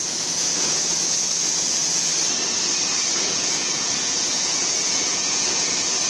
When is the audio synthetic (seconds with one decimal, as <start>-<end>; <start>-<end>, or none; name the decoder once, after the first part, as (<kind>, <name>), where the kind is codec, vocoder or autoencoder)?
0.0-2.1 (vocoder, Vocos); 3.3-6.1